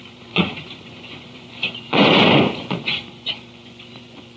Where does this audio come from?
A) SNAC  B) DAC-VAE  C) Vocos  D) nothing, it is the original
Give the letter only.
C